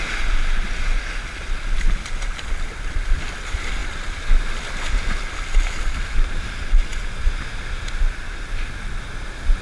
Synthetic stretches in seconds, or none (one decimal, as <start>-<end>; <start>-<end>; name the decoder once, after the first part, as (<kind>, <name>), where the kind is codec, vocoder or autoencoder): none